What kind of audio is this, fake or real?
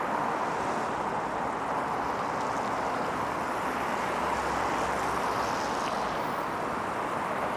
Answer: real